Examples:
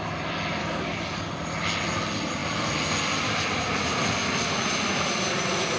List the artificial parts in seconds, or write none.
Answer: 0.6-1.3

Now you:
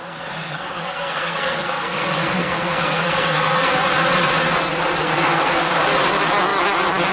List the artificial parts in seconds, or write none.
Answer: 0.0-3.7; 5.0-5.7

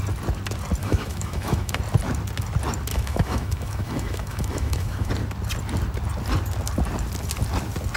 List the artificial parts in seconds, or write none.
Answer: 0.8-1.8; 2.9-5.1

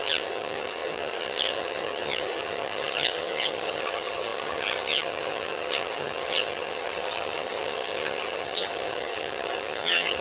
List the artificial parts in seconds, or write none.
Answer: 0.0-10.2

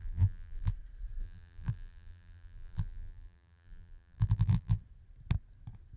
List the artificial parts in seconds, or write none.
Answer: 0.0-0.7; 1.2-4.8